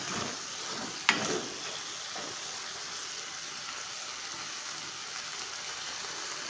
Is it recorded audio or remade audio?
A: recorded